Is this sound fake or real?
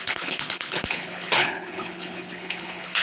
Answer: fake